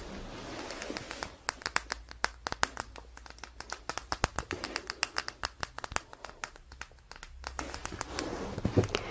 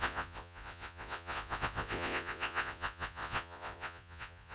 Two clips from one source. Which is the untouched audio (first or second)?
first